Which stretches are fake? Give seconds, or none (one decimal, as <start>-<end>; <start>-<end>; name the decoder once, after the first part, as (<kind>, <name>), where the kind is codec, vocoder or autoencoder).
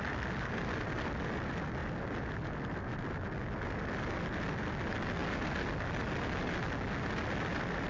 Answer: none